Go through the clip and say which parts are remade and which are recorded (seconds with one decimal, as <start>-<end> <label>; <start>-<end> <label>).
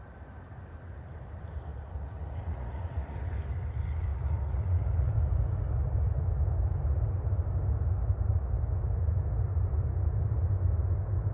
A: 0.0-1.7 recorded; 1.7-3.3 remade; 3.3-4.1 recorded; 4.1-5.1 remade; 5.1-11.3 recorded